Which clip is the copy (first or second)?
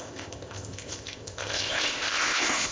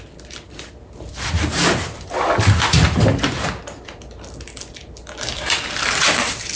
first